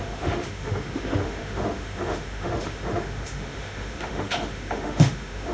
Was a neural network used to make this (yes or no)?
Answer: yes